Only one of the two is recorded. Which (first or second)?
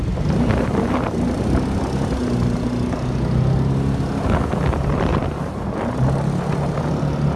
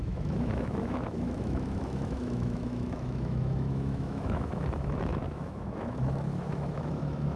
first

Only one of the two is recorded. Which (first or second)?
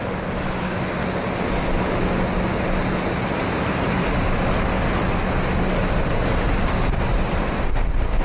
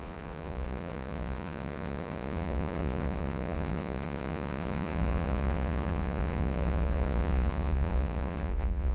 first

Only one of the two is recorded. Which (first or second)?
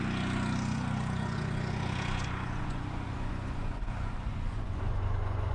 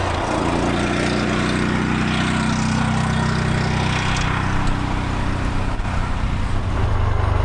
second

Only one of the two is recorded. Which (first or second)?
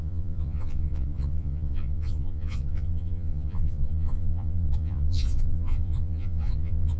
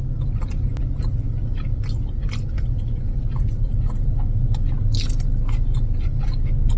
second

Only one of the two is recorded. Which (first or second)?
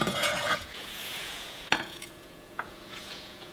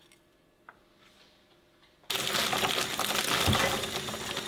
second